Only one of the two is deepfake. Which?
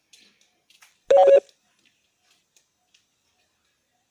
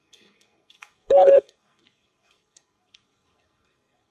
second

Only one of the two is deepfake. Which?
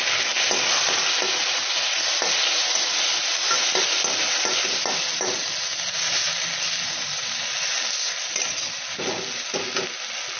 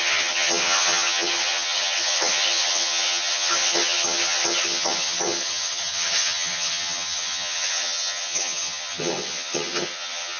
second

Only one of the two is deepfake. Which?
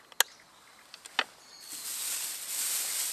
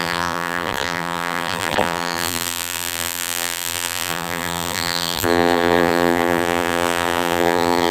second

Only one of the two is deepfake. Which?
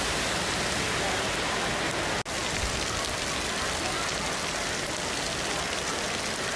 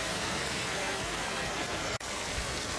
second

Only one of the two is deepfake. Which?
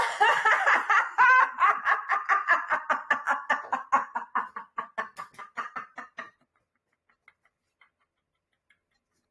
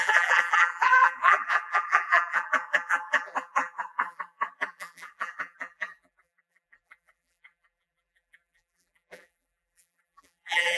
second